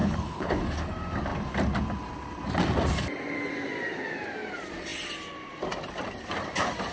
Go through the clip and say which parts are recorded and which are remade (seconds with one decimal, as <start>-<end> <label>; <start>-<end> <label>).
0.0-0.6 remade; 0.6-6.9 recorded